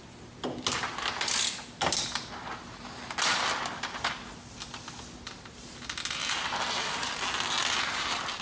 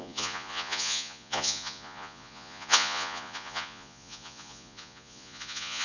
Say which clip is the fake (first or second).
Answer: second